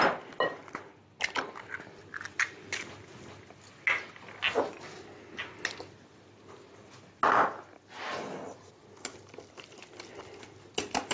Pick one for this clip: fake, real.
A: real